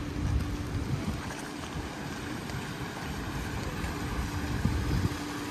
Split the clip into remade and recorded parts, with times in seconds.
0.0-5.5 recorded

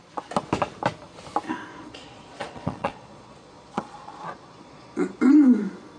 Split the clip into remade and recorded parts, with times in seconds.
0.0-1.7 recorded; 1.7-5.3 remade; 5.3-6.0 recorded

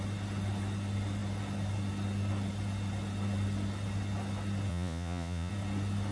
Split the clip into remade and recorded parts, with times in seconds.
0.0-4.7 recorded; 4.7-5.5 remade; 5.5-6.1 recorded